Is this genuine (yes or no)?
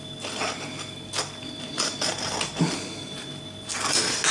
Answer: yes